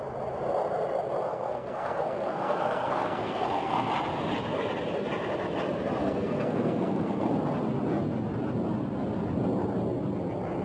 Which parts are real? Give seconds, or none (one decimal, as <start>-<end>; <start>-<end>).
0.0-1.3; 3.9-6.0; 7.3-10.6